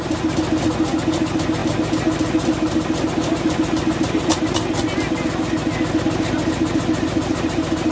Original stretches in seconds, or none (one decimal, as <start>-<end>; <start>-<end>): 0.0-7.9